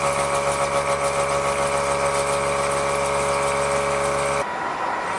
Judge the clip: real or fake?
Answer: real